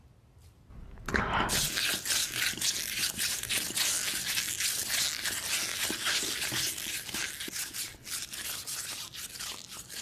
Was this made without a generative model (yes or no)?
yes